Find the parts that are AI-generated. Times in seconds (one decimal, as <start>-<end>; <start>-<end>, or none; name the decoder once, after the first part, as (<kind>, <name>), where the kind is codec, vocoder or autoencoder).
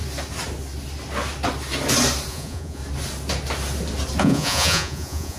2.3-2.8 (vocoder, Vocos); 4.2-5.4